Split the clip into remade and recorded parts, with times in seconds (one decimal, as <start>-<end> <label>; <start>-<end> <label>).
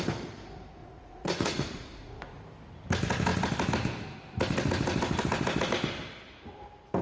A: 0.0-0.8 recorded; 0.8-2.4 remade; 2.4-7.0 recorded